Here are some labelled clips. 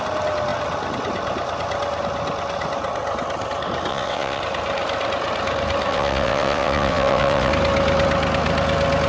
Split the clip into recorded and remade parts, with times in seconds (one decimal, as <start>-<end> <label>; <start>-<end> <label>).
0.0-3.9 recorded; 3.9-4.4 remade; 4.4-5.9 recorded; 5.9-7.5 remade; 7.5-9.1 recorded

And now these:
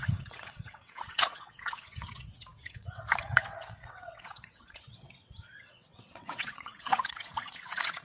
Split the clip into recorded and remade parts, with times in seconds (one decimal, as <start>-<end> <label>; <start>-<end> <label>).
0.0-8.0 remade

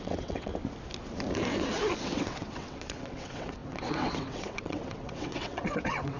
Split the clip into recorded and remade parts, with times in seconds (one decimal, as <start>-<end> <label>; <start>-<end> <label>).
0.0-0.5 remade; 0.5-2.0 recorded; 2.0-6.2 remade

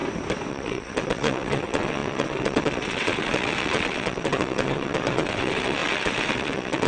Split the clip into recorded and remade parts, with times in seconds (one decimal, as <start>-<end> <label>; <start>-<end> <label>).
0.0-0.5 recorded; 0.5-6.9 remade